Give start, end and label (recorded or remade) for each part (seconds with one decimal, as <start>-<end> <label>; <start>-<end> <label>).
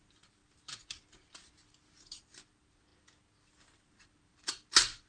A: 0.0-5.1 recorded